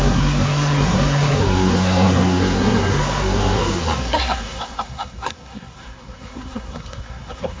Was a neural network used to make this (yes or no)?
yes